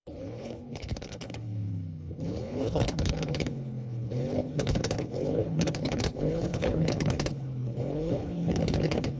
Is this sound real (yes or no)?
no